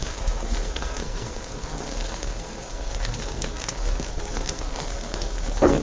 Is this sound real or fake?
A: fake